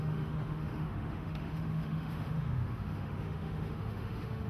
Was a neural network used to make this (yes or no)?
yes